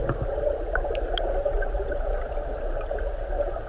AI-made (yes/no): no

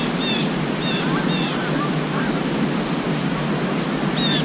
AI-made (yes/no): no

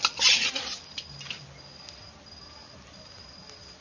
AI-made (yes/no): no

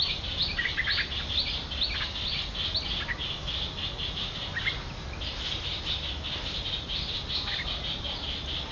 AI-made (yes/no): no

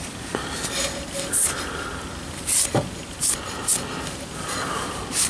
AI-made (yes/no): no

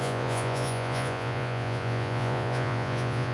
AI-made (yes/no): yes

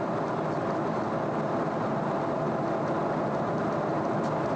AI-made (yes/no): no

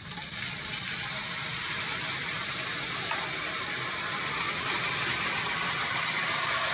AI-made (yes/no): yes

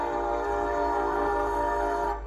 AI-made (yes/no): yes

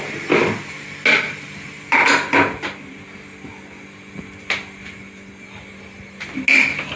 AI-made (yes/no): no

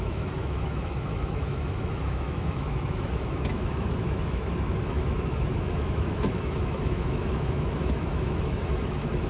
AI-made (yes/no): yes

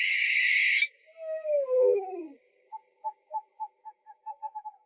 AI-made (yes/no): yes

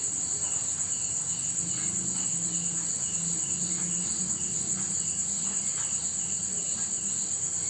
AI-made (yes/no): no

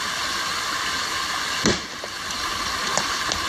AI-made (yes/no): no